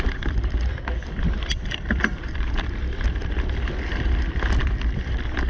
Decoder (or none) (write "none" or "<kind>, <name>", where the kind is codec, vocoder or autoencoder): vocoder, BigVGAN v2